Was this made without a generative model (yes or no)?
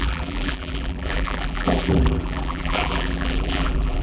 no